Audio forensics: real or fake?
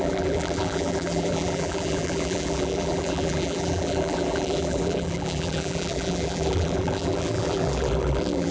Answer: fake